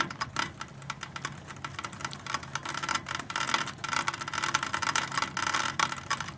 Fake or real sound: real